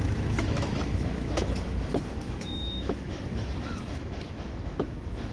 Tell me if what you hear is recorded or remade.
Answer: remade